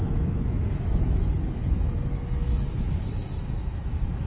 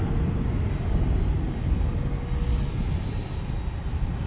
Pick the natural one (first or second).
second